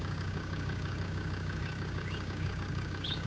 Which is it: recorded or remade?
remade